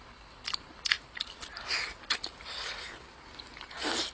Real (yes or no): yes